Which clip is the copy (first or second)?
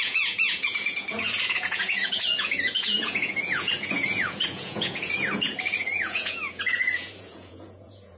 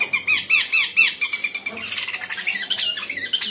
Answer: first